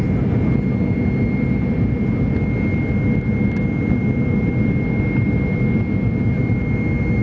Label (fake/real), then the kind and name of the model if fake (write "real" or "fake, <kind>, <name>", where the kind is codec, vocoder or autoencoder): real